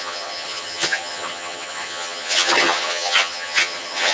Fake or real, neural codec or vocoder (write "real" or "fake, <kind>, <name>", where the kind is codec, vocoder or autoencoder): fake, vocoder, HiFi-GAN